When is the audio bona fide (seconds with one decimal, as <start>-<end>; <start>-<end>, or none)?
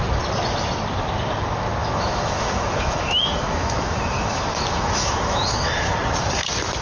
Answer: 0.0-1.8; 5.9-6.8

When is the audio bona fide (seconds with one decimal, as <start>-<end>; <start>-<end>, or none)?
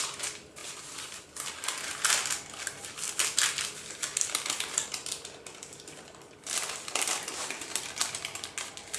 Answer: 0.0-9.0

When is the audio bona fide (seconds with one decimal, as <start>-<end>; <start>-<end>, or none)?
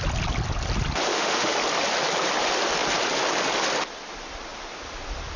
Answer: 0.0-1.1; 1.6-5.4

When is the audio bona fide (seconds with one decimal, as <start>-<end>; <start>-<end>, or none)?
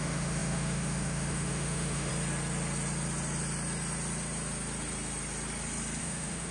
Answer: 2.1-6.0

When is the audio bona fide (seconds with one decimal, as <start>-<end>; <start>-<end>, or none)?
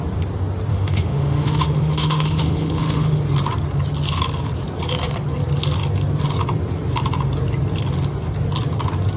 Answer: 0.0-0.7; 3.2-9.2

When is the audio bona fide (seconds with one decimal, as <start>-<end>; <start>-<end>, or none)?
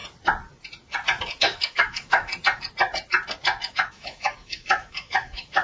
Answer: 0.0-1.4; 2.3-3.7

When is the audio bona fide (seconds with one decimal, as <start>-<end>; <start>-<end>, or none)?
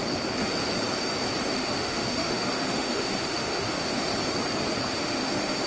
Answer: 0.0-1.5; 4.1-5.0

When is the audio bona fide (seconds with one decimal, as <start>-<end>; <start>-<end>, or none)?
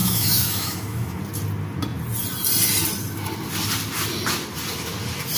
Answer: 1.2-5.4